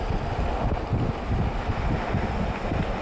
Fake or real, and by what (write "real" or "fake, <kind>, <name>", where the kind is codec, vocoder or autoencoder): real